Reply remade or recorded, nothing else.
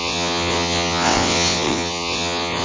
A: remade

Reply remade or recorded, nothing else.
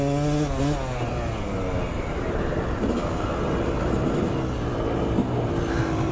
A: recorded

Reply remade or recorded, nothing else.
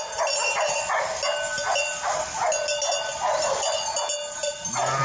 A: recorded